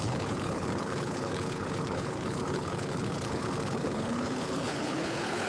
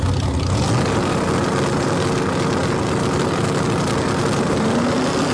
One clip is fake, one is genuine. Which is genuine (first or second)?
second